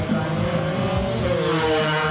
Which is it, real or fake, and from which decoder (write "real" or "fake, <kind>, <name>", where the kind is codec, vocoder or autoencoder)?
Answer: real